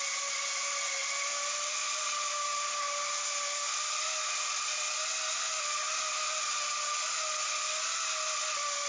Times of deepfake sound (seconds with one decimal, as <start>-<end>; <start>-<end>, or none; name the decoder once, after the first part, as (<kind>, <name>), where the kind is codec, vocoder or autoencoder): none